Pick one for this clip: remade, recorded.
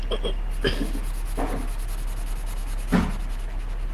recorded